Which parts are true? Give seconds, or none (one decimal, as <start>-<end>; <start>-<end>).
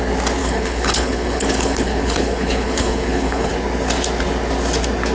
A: 0.0-0.4; 3.5-5.1